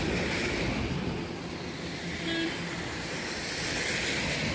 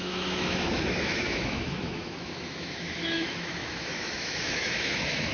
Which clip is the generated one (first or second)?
second